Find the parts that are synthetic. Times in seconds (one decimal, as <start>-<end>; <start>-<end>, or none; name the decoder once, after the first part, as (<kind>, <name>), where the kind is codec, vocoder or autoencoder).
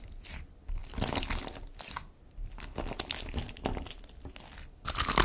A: none